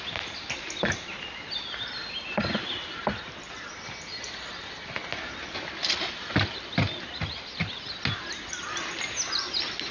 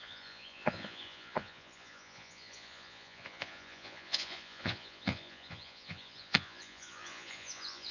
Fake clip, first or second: second